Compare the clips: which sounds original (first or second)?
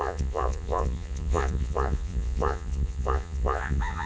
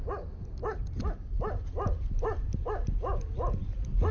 second